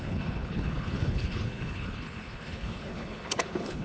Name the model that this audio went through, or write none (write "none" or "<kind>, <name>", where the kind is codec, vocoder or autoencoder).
codec, HILCodec